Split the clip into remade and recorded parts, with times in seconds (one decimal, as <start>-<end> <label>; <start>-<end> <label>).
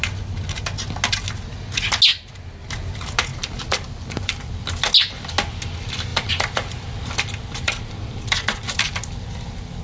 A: 0.0-3.3 recorded; 3.3-4.7 remade; 4.7-6.1 recorded; 6.1-9.8 remade